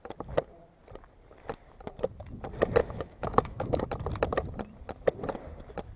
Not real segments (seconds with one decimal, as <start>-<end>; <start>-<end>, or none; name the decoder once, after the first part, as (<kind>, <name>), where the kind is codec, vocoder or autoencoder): 2.8-3.8 (autoencoder, DAC-VAE)